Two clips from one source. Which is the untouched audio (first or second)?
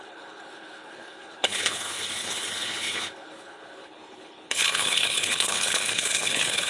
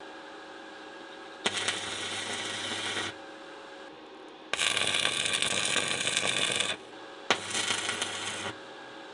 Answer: second